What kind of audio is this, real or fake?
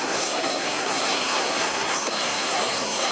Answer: fake